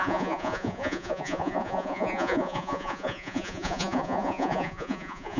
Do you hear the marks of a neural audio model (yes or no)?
yes